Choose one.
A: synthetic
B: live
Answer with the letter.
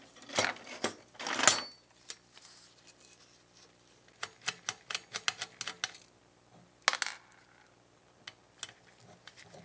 B